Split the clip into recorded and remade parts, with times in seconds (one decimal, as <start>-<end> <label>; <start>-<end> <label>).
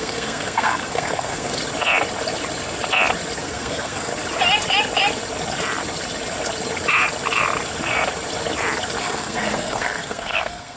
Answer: 0.0-1.6 remade; 1.6-3.4 recorded; 3.4-4.1 remade; 4.1-9.0 recorded; 9.0-10.8 remade